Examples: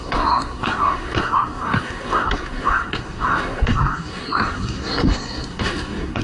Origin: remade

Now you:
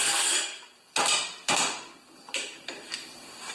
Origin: remade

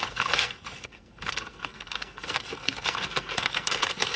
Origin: remade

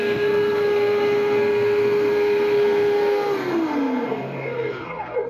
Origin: remade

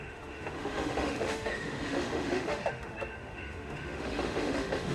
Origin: remade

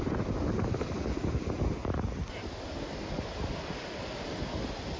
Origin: recorded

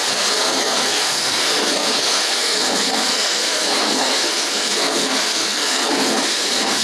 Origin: remade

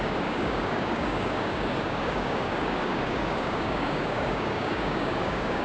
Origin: remade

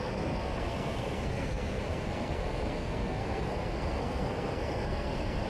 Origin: remade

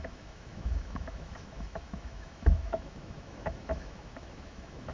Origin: remade